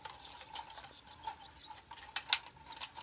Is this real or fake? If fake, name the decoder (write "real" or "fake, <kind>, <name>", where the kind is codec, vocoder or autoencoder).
real